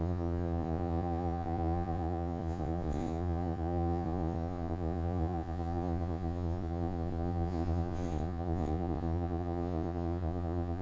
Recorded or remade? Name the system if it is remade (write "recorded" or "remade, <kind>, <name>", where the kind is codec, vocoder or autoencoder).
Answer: remade, vocoder, Vocos